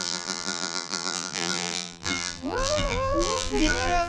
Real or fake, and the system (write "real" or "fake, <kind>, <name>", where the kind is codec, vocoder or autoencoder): fake, vocoder, BigVGAN v2